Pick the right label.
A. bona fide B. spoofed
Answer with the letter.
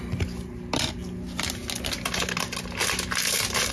A